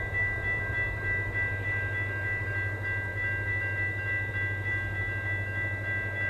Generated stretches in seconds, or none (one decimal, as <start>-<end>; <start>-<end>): none